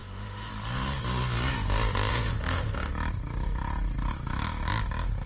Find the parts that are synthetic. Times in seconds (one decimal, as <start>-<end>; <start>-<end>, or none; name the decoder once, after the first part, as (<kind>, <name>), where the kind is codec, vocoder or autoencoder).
0.0-0.5 (autoencoder, DAC-VAE); 2.1-2.9